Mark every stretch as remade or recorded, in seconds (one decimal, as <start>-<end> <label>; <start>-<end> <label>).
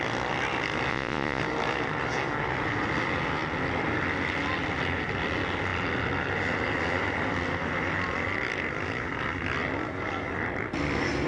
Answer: 0.0-0.9 recorded; 0.9-1.4 remade; 1.4-11.3 recorded